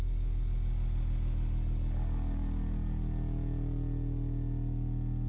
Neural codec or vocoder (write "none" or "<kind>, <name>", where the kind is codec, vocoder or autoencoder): none